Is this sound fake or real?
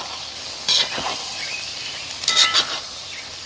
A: real